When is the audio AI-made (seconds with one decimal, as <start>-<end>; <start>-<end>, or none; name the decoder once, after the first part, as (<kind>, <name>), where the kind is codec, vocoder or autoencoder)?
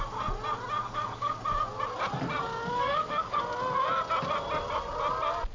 0.8-1.4 (codec, DAC); 2.5-3.4